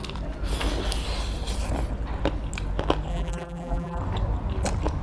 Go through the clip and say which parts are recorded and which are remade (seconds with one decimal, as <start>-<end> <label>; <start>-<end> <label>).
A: 0.0-3.1 recorded; 3.1-4.0 remade; 4.0-5.0 recorded